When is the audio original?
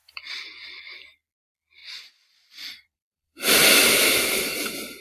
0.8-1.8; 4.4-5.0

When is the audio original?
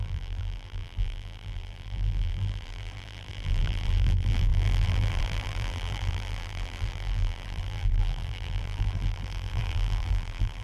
none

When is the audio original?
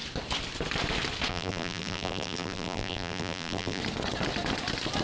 0.0-1.3; 3.8-5.0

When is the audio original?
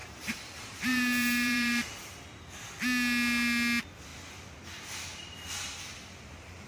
2.4-6.7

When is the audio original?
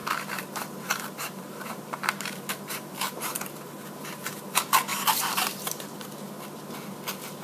4.4-4.9; 5.8-7.4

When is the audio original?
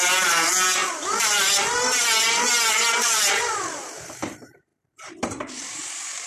none